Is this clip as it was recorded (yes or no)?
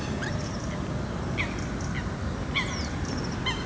yes